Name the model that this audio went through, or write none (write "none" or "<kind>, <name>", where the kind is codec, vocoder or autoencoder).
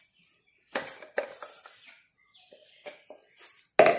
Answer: none